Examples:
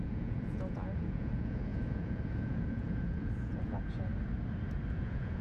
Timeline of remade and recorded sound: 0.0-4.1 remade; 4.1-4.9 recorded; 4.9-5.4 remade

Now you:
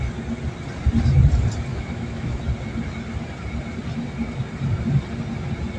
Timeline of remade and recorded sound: 0.0-1.7 recorded; 1.7-2.4 remade; 2.4-5.8 recorded

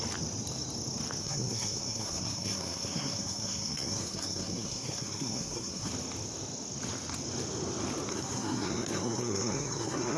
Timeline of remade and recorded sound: 0.0-1.2 recorded; 1.2-5.9 remade; 5.9-8.1 recorded; 8.1-10.2 remade

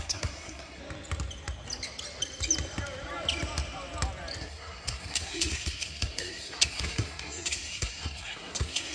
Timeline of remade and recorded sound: 0.0-0.8 remade; 0.8-4.4 recorded; 4.4-8.9 remade

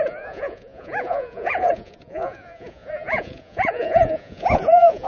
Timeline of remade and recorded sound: 0.0-5.1 remade

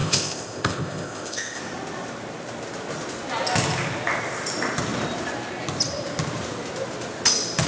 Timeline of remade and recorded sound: 0.0-1.6 remade; 1.6-7.7 recorded